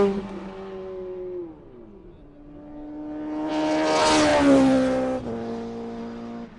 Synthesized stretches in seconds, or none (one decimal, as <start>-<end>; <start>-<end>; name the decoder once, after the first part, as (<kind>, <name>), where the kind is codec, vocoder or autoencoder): none